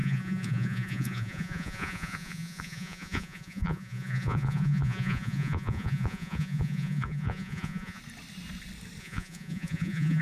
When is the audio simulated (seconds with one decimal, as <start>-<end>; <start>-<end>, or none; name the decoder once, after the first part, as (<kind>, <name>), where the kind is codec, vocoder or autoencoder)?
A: 0.0-8.0 (vocoder, Vocos); 9.0-10.2